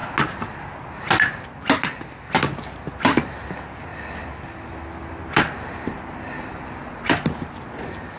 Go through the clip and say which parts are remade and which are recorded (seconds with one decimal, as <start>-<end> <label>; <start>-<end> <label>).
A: 0.0-8.2 recorded